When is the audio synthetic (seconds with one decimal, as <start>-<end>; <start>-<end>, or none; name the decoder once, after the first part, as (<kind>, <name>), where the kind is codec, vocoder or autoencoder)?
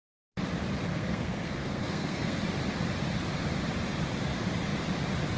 0.9-2.4 (codec, SNAC)